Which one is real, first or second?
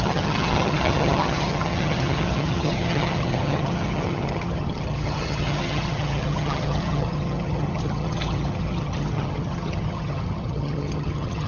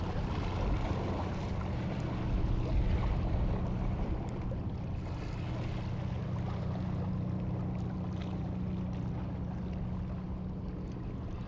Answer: second